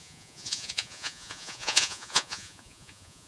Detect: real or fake fake